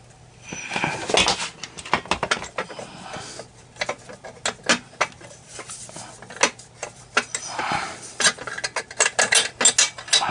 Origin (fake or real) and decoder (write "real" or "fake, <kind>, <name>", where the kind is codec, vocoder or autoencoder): real